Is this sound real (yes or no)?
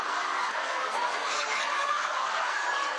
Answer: no